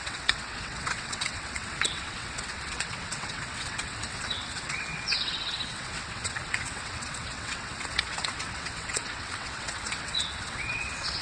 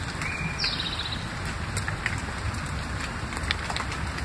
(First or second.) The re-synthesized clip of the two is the first